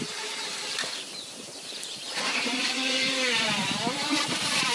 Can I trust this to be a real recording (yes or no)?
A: no